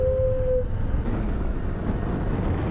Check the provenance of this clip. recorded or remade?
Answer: recorded